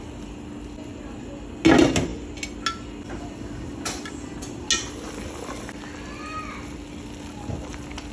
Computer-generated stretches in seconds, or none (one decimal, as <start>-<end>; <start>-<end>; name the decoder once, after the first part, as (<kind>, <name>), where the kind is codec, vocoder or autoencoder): none